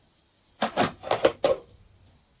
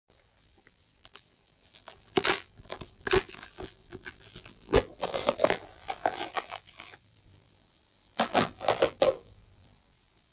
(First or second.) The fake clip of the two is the second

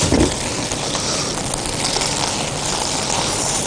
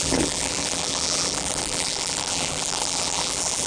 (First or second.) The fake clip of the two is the second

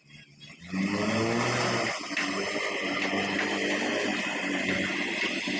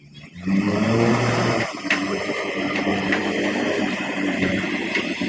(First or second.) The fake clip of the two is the second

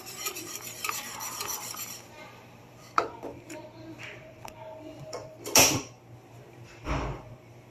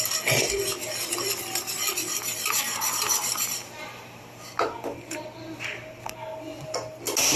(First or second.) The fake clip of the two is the first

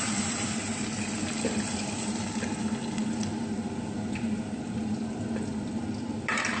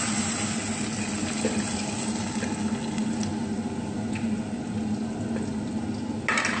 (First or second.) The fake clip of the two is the first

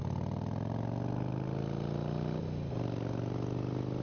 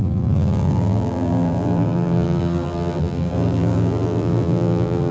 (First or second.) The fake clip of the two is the second